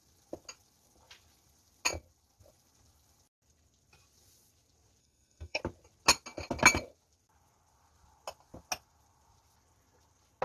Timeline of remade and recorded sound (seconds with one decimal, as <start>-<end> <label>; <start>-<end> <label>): 0.0-5.0 recorded; 5.0-5.6 remade; 5.6-10.4 recorded